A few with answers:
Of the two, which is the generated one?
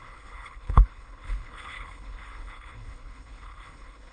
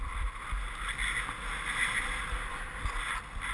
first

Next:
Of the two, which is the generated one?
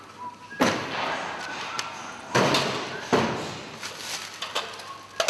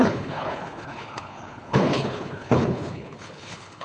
second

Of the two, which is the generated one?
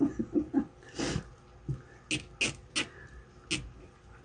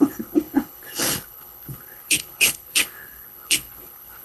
second